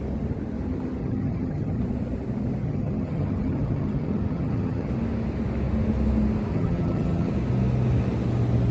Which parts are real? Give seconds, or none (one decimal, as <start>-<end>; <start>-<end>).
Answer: 0.0-1.0; 1.8-2.6; 4.9-6.5; 7.3-8.7